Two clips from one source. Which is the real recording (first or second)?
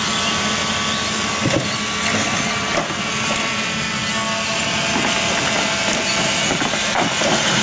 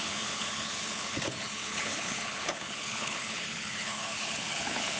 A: first